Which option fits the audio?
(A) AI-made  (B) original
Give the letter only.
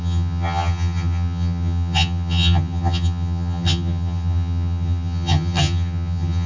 A